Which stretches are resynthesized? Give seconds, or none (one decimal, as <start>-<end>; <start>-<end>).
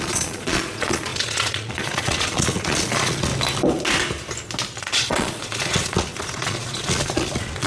0.0-3.3; 4.8-7.7